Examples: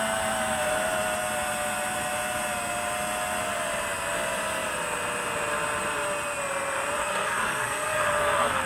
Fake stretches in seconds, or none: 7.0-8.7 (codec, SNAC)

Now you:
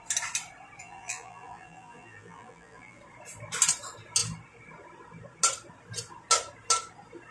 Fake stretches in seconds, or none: 0.8-3.0 (vocoder, BigVGAN v2)

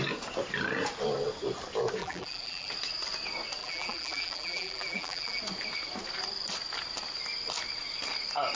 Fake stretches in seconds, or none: 2.0-2.7 (vocoder, BigVGAN v2); 3.6-5.4

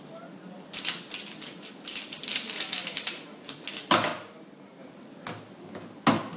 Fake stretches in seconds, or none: 2.2-2.8 (vocoder, BigVGAN v2); 4.1-4.8

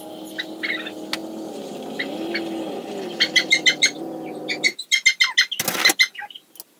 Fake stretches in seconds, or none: none

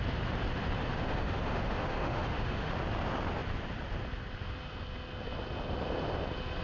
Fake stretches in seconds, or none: 0.8-2.7 (autoencoder, DAC-VAE)

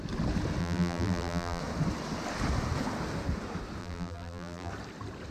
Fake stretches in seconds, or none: 0.6-1.6 (vocoder, BigVGAN v2); 3.8-4.7

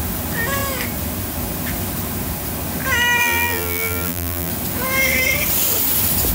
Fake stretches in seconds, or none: 3.2-4.5 (vocoder, BigVGAN v2)